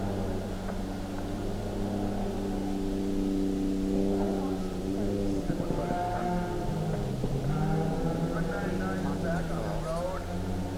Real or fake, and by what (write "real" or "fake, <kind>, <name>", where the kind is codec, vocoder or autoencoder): real